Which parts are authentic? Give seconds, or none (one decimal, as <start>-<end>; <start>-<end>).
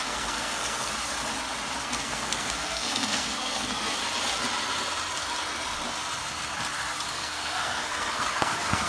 0.9-1.8; 4.0-7.1